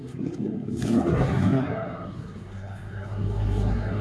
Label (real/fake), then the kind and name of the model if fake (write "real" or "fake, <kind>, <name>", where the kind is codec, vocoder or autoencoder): fake, codec, SNAC